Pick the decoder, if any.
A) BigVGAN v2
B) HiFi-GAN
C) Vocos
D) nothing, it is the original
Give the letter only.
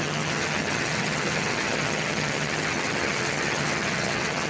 B